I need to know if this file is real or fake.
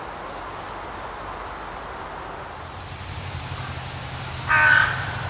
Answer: real